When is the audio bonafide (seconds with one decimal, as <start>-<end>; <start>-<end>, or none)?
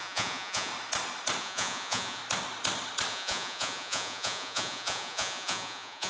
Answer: 0.7-1.4; 2.2-3.1